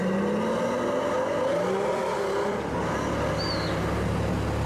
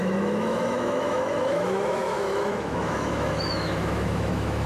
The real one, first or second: first